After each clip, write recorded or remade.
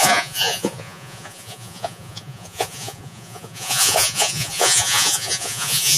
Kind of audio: remade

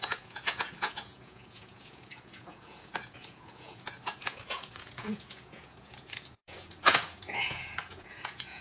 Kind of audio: remade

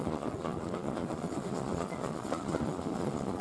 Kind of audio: remade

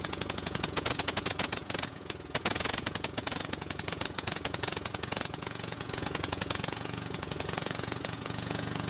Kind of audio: remade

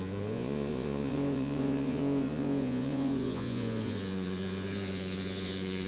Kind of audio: remade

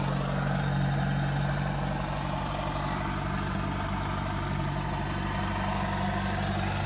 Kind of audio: recorded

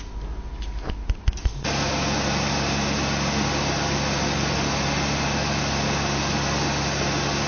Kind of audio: recorded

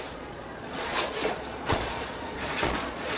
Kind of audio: remade